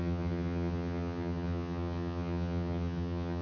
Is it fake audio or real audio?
fake